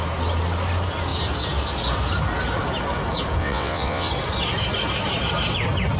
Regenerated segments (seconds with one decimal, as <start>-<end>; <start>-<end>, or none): 3.4-4.1